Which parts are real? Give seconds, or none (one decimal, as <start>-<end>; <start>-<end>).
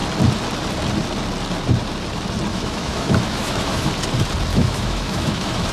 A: 0.0-2.5; 3.9-4.5